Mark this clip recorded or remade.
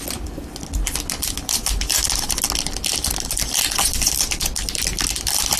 recorded